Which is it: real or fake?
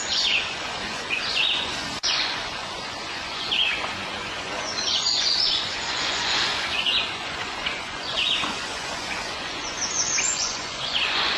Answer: fake